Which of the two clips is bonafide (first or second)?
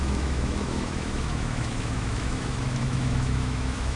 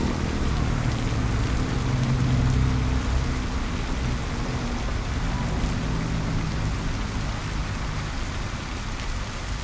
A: second